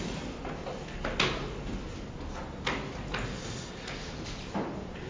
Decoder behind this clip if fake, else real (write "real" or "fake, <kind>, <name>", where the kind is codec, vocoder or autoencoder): real